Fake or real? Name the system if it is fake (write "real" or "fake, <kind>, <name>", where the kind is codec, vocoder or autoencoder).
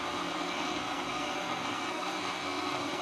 fake, codec, SNAC